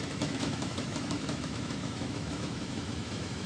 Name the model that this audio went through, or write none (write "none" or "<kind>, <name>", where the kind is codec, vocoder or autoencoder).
autoencoder, DAC-VAE